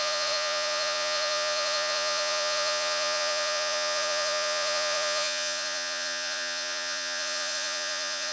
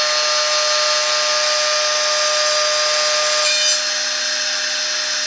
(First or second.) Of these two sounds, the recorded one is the second